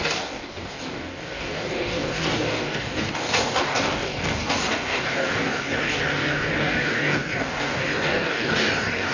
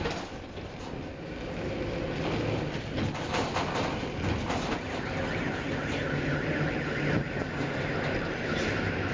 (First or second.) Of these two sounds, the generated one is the first